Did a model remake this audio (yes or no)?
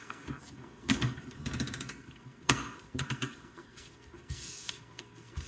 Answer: yes